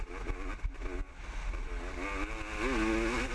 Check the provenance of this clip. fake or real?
real